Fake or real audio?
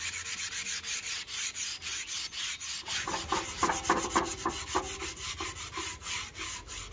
real